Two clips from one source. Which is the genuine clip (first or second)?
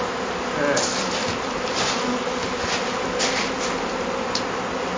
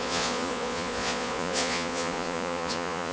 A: first